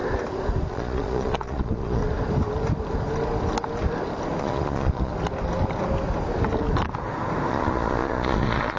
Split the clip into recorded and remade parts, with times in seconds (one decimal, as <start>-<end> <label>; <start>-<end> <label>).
0.0-0.7 recorded; 0.7-2.0 remade; 2.0-4.4 recorded; 4.4-5.1 remade; 5.1-7.5 recorded; 7.5-8.8 remade